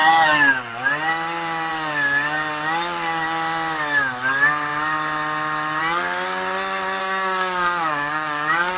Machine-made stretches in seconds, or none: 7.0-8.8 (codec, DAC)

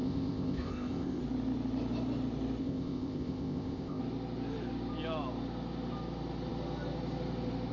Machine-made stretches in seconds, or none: 0.0-1.2 (codec, ZipCodec); 2.6-4.0

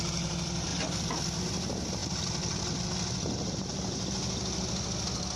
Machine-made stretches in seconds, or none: none

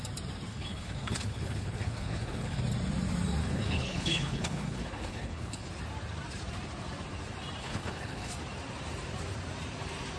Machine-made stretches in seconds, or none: 0.5-2.6 (codec, HILCodec); 3.4-5.7; 7.6-8.3